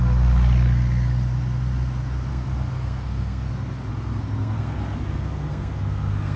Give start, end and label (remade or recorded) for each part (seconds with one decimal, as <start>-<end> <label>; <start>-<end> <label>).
0.0-2.3 recorded; 2.3-3.5 remade; 3.5-3.9 recorded; 3.9-6.4 remade